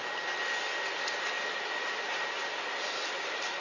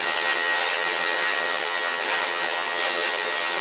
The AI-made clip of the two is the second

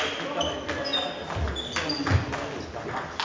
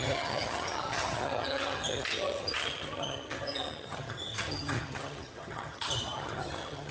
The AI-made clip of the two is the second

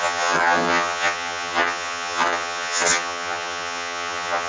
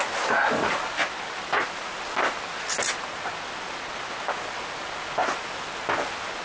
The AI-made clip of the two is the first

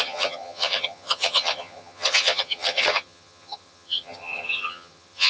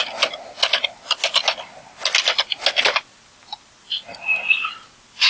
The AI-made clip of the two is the first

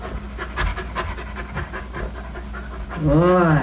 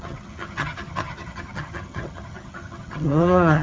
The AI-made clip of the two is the second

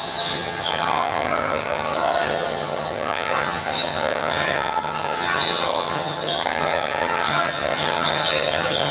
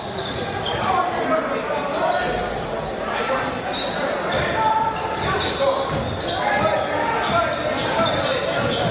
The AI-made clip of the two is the first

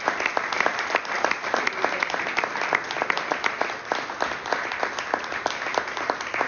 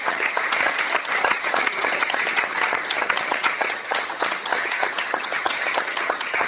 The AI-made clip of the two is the second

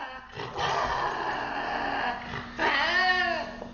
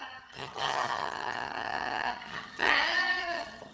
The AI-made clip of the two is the second